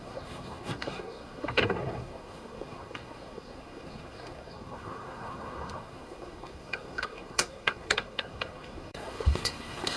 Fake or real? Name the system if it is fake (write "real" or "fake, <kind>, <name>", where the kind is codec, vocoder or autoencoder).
fake, codec, SNAC